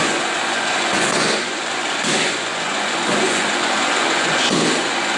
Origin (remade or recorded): remade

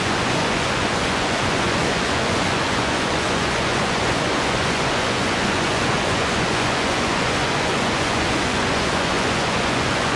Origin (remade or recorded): remade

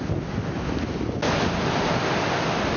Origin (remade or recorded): recorded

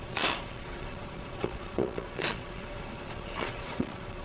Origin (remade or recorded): remade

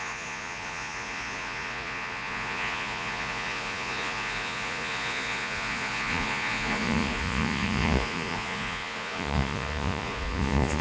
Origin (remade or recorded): remade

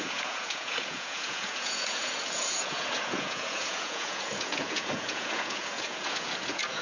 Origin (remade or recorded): remade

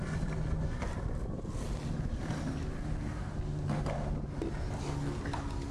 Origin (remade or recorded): recorded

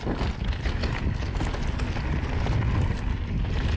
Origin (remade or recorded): recorded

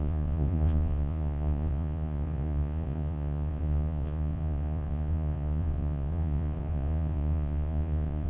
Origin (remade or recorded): remade